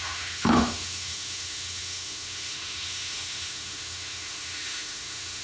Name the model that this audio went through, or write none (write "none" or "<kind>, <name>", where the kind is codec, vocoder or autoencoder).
autoencoder, DAC-VAE